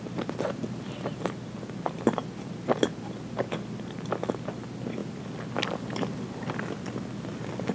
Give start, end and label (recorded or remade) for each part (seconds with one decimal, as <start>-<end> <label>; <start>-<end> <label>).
0.0-7.7 recorded